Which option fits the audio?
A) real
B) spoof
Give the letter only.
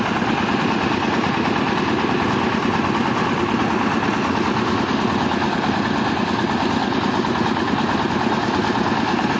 A